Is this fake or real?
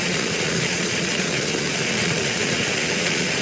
fake